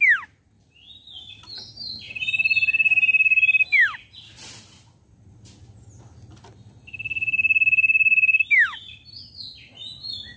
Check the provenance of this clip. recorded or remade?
recorded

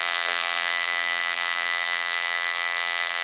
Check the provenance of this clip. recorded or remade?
remade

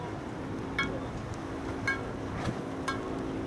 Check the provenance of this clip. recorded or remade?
recorded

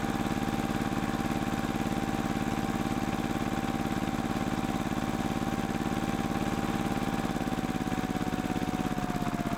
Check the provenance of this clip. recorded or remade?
recorded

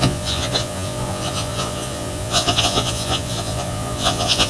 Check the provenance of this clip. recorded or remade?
remade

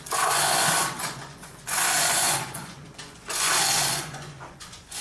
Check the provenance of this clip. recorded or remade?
remade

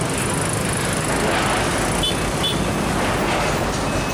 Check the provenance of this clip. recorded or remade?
recorded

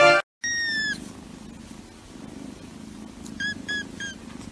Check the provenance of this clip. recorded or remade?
recorded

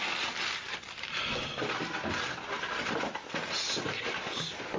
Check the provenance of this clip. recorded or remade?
recorded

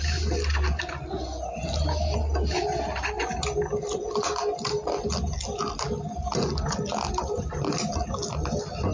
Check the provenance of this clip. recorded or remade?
recorded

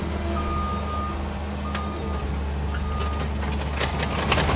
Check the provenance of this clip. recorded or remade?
recorded